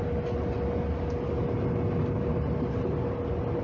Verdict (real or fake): real